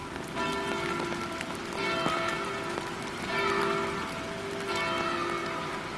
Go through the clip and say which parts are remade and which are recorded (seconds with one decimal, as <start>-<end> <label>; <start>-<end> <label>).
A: 0.0-6.0 recorded